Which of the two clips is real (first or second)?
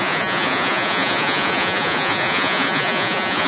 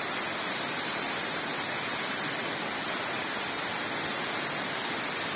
second